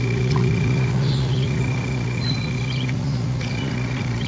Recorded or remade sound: remade